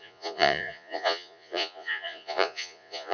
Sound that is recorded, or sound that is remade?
remade